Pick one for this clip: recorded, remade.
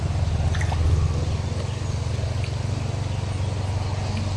recorded